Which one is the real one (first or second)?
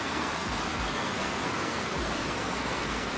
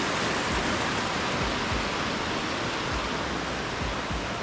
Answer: second